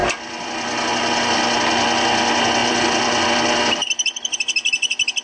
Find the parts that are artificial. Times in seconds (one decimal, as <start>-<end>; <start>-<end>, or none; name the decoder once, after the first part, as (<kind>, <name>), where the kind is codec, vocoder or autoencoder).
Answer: 0.0-0.9 (vocoder, BigVGAN v2); 2.6-3.3; 3.8-4.4